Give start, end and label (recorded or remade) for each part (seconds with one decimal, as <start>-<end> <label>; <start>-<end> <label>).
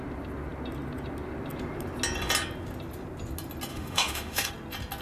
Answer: 0.0-3.7 recorded; 3.7-4.5 remade; 4.5-5.0 recorded